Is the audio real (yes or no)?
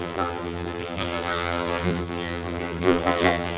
no